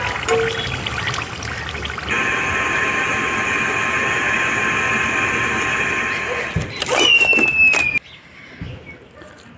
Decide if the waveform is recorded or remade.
recorded